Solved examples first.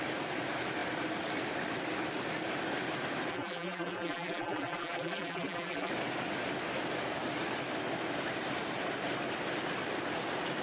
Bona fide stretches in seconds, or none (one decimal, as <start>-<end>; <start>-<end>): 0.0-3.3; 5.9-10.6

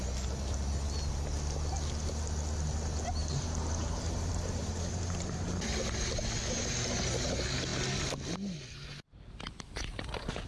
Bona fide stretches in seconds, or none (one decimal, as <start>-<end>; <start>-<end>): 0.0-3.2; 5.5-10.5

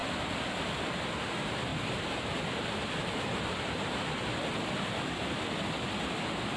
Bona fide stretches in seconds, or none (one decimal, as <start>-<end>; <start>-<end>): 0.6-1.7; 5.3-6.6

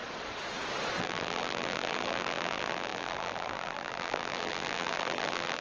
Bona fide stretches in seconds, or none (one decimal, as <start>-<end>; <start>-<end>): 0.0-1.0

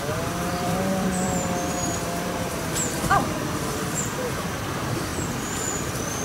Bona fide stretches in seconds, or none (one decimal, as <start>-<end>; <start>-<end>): 0.0-0.5; 4.2-6.2